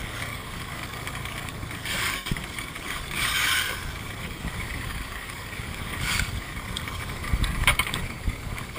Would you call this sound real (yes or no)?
no